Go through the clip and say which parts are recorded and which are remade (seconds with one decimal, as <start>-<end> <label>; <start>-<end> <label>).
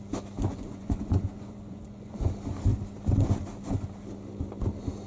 0.0-0.5 recorded; 0.5-2.3 remade; 2.3-5.1 recorded